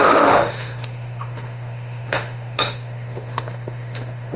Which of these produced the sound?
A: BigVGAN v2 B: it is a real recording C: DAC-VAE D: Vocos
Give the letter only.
C